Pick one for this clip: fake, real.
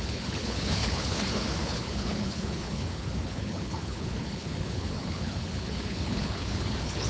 fake